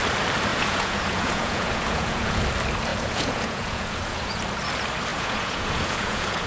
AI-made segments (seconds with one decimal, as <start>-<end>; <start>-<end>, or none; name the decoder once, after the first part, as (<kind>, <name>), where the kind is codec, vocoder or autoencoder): 0.5-2.4 (vocoder, Vocos); 2.9-4.4; 5.1-6.5